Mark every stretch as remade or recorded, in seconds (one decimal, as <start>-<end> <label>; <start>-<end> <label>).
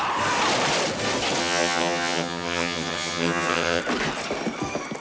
0.0-1.4 recorded; 1.4-3.8 remade; 3.8-5.0 recorded